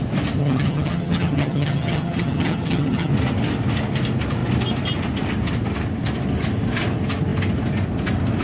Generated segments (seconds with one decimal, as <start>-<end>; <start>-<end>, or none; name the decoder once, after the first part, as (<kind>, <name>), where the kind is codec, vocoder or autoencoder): 0.4-3.1 (vocoder, HiFi-GAN)